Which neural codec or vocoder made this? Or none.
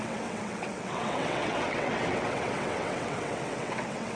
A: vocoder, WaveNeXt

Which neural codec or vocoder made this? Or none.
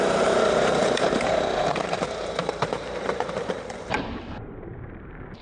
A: vocoder, BigVGAN v2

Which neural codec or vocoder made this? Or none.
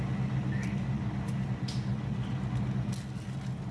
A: none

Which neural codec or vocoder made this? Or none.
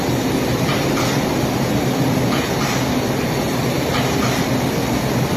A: none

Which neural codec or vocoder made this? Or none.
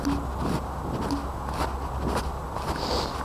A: none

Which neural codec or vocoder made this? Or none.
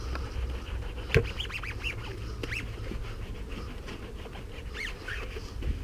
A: none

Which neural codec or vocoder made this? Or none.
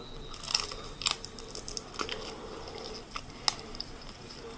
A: none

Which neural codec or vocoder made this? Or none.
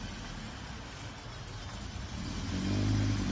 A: none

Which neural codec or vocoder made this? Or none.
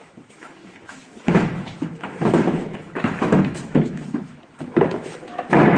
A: autoencoder, DAC-VAE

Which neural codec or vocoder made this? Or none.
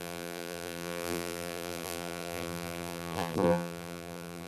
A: vocoder, BigVGAN v2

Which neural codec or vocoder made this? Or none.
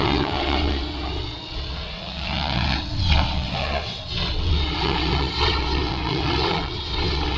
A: vocoder, WaveNeXt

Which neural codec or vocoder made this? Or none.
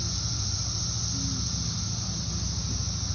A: none